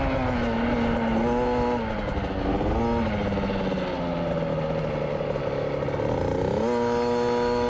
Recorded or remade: recorded